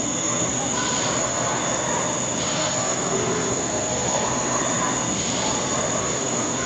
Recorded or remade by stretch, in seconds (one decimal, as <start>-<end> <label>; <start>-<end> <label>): 0.0-0.6 remade; 0.6-1.2 recorded; 1.2-1.6 remade; 1.6-2.5 recorded; 2.5-4.6 remade; 4.6-6.0 recorded; 6.0-6.7 remade